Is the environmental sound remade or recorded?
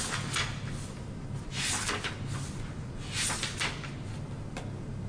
recorded